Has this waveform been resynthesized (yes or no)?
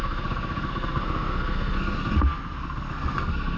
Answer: yes